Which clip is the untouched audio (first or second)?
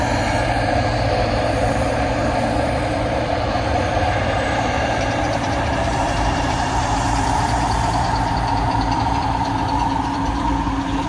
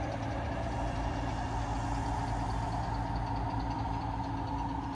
second